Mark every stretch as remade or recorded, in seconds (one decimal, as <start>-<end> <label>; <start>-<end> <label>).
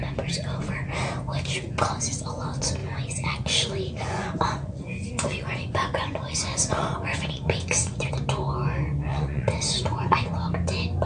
0.0-2.8 recorded; 2.8-8.1 remade; 8.1-9.1 recorded; 9.1-10.3 remade; 10.3-11.1 recorded